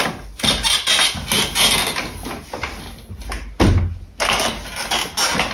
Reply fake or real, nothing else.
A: real